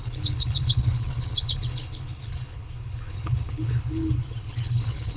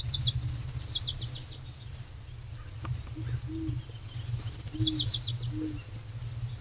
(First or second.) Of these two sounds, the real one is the second